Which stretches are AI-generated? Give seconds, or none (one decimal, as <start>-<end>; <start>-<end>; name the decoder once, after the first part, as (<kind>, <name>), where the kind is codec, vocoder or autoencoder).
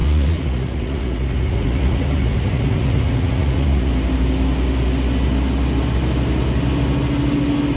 0.0-3.9 (vocoder, Vocos)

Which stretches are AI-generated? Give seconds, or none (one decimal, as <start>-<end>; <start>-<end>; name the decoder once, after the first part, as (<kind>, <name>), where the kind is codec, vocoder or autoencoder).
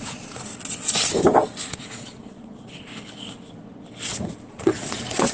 0.0-0.5 (vocoder, Vocos); 1.7-2.9; 4.5-5.3